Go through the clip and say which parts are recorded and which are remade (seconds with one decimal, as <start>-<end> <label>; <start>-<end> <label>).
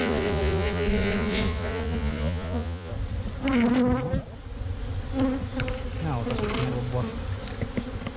0.0-2.9 remade; 2.9-8.2 recorded